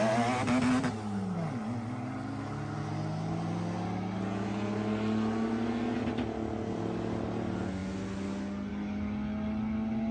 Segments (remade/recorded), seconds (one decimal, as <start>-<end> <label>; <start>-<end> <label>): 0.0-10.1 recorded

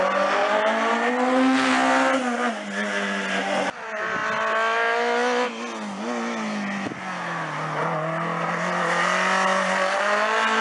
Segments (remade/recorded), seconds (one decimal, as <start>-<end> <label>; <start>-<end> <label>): 0.0-0.4 recorded; 0.4-1.1 remade; 1.1-10.6 recorded

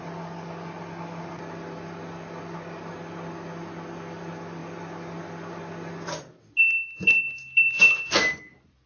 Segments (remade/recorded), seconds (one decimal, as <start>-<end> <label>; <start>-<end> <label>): 0.0-8.9 recorded